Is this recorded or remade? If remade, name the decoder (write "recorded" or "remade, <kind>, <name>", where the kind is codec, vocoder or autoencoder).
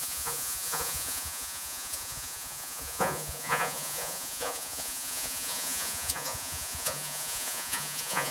remade, vocoder, Vocos